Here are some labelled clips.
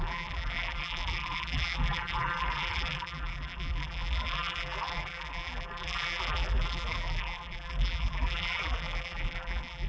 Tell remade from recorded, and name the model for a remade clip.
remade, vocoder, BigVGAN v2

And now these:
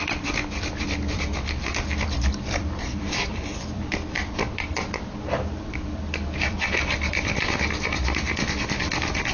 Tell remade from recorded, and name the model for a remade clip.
remade, vocoder, BigVGAN v2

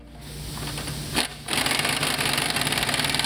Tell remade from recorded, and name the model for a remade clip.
recorded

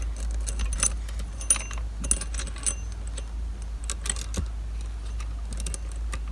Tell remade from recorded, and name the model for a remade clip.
recorded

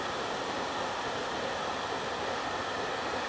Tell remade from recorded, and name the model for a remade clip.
recorded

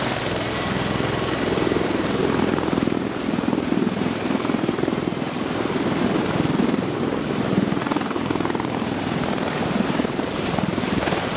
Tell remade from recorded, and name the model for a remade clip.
remade, vocoder, BigVGAN v2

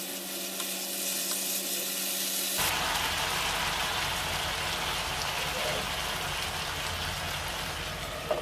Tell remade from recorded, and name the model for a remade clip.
recorded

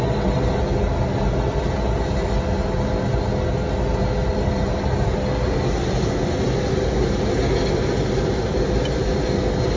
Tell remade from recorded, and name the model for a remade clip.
recorded